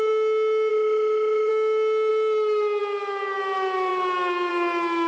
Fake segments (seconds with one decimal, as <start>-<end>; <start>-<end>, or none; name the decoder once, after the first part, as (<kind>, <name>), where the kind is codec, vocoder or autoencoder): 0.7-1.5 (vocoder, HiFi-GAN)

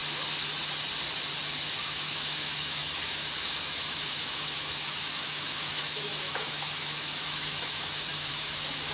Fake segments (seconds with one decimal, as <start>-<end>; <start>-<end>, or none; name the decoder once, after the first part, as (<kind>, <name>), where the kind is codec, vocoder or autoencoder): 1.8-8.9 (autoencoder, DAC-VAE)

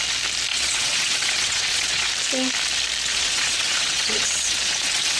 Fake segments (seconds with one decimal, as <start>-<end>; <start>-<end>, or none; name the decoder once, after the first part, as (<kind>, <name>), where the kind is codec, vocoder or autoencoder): 0.5-2.1 (vocoder, WaveNeXt); 3.1-5.2

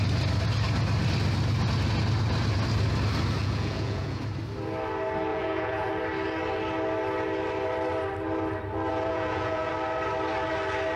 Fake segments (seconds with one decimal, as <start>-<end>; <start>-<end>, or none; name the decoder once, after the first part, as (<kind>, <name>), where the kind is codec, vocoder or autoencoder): 3.4-4.2 (vocoder, Vocos); 5.3-5.9; 8.9-9.7

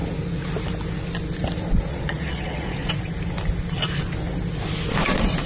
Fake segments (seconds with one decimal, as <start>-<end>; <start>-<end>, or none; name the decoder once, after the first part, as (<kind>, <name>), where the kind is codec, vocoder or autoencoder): 1.9-2.9 (vocoder, Vocos)